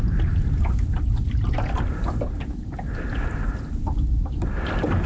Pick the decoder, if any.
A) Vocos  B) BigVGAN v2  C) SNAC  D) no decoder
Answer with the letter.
D